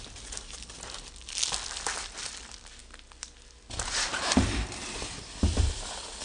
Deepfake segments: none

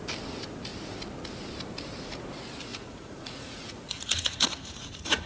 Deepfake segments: 2.7-5.3 (vocoder, Vocos)

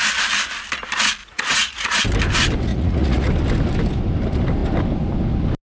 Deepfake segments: 1.2-2.0 (vocoder, Vocos); 2.7-3.3

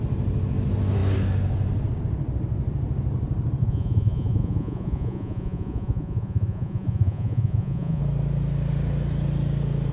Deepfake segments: 3.6-8.0 (vocoder, Vocos)

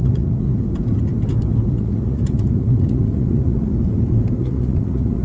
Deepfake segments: 0.0-0.5 (vocoder, Vocos); 1.7-3.7; 4.4-5.2

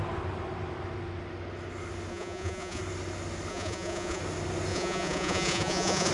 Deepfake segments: 2.1-2.8 (vocoder, Vocos); 3.5-4.2; 4.7-6.1